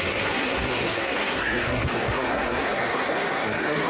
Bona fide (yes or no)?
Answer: no